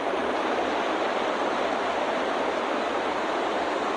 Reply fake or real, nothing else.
real